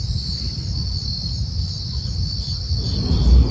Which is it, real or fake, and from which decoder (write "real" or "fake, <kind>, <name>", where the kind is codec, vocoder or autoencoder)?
real